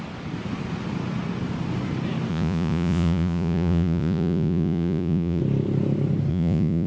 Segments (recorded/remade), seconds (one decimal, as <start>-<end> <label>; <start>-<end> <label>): 0.0-2.3 recorded; 2.3-5.4 remade; 5.4-6.3 recorded; 6.3-6.9 remade